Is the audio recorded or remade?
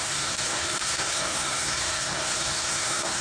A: remade